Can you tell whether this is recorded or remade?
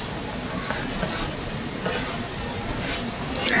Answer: recorded